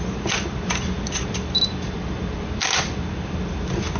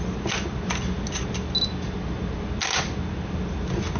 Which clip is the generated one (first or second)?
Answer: first